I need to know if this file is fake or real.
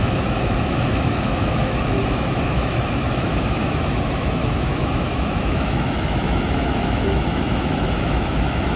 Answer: fake